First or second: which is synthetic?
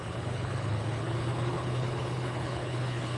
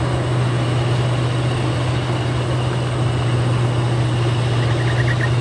first